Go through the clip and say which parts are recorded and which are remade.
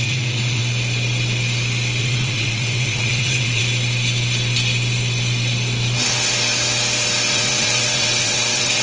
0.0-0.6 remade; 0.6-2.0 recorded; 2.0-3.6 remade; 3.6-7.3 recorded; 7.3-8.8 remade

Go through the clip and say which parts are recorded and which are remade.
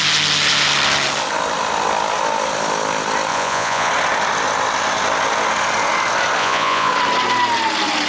0.0-3.3 recorded; 3.3-3.9 remade; 3.9-6.4 recorded; 6.4-6.9 remade; 6.9-8.1 recorded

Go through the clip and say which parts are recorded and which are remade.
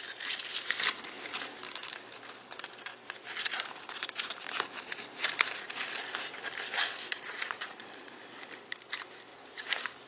0.0-7.1 recorded; 7.1-8.2 remade; 8.2-10.1 recorded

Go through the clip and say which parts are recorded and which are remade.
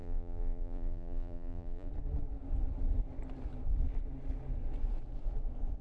0.0-1.9 remade; 1.9-5.8 recorded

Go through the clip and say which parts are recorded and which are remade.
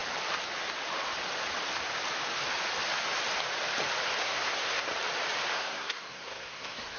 0.0-4.2 recorded; 4.2-4.9 remade; 4.9-5.5 recorded; 5.5-7.0 remade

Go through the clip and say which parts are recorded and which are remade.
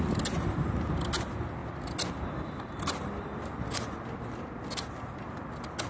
0.0-5.9 recorded